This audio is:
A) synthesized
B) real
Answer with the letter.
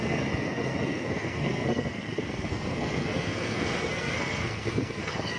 A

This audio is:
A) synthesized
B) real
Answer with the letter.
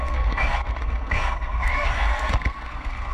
A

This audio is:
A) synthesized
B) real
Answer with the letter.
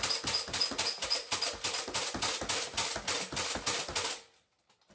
B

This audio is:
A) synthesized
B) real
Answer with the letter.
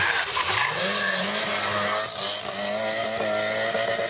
B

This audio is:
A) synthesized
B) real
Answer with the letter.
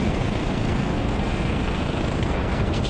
A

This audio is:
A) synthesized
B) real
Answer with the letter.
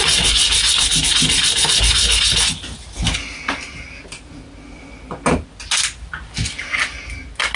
B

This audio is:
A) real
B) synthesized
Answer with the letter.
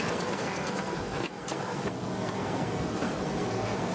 B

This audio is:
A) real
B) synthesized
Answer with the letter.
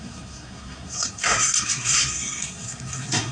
B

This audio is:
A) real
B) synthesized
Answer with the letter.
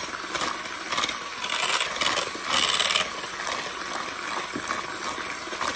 A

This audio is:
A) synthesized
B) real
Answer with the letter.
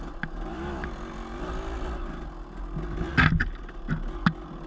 B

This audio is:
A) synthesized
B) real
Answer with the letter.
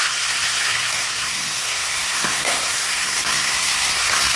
A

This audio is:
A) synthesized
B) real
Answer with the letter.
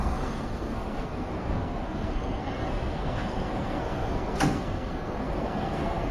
A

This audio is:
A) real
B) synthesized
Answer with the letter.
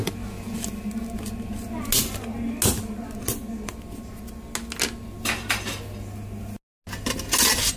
A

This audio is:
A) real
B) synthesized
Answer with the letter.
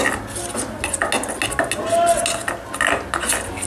A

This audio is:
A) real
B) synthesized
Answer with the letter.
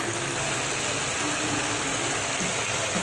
A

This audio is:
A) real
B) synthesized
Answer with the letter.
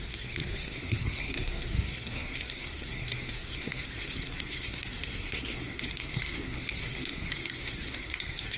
B